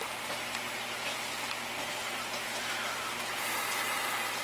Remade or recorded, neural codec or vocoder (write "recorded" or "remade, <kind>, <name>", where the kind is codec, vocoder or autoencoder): recorded